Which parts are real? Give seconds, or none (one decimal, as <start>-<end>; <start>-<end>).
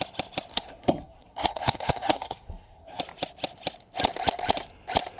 0.0-0.5; 3.0-5.2